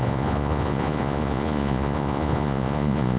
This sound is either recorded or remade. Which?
remade